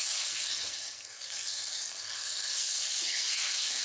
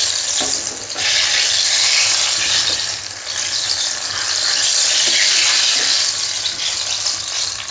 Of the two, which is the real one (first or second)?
second